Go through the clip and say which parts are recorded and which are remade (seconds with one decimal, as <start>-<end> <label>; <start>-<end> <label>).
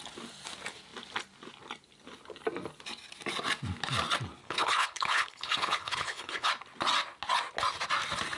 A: 0.0-4.4 recorded; 4.4-6.5 remade; 6.5-8.4 recorded